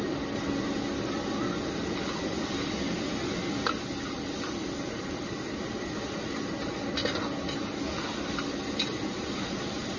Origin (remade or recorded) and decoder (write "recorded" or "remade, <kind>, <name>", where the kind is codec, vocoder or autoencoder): recorded